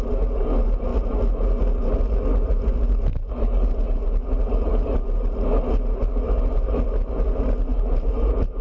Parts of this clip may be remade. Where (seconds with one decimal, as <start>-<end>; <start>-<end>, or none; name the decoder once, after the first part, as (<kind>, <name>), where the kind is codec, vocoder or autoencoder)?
none